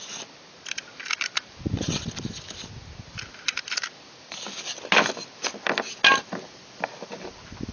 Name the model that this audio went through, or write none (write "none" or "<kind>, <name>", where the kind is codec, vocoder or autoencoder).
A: none